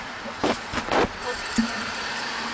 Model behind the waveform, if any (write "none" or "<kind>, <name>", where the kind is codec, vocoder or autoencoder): vocoder, BigVGAN v2